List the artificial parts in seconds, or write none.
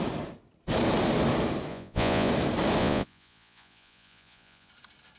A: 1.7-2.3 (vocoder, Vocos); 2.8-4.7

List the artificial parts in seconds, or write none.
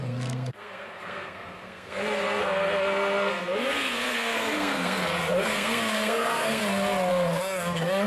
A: 0.0-6.6 (codec, SNAC); 7.1-8.1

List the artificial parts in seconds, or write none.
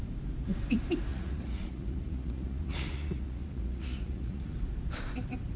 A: 1.1-4.5 (vocoder, Vocos)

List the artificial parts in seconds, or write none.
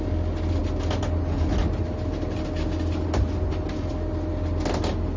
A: none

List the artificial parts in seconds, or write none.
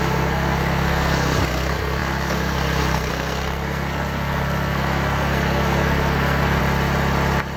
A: 0.0-6.6 (codec, SNAC)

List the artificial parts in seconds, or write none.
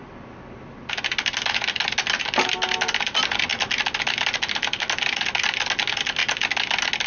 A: none